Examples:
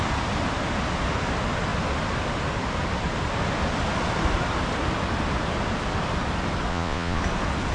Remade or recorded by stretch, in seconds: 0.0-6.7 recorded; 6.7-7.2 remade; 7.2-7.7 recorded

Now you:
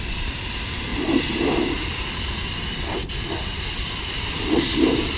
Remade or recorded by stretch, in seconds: 0.0-5.2 remade